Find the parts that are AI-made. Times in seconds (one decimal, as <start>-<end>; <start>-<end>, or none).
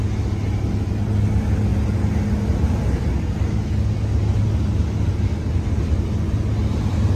none